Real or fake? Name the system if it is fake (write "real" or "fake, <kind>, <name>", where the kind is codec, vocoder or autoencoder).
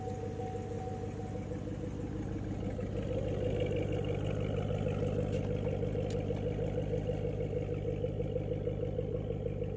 real